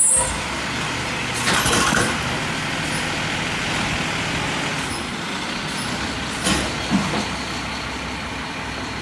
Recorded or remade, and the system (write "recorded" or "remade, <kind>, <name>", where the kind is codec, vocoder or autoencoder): recorded